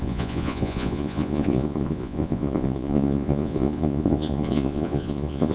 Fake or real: fake